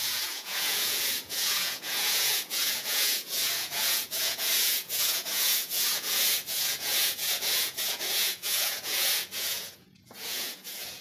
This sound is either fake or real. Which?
fake